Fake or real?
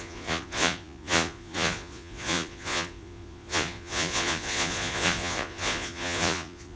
fake